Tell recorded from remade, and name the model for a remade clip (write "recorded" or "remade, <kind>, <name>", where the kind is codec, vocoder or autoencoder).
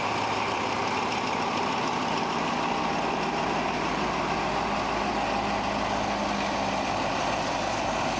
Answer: recorded